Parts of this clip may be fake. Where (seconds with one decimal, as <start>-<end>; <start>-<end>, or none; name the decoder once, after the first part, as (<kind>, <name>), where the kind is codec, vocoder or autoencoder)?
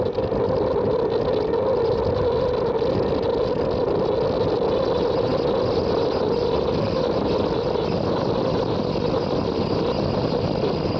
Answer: none